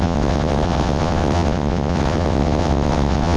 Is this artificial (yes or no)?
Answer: yes